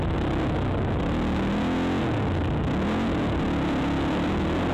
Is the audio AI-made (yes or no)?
no